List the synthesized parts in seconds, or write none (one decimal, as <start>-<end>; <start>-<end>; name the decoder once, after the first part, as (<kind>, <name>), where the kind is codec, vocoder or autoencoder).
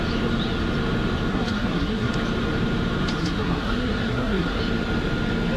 1.3-2.1 (codec, SNAC); 3.2-4.6